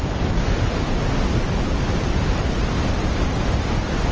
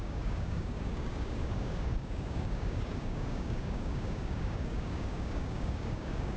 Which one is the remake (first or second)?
second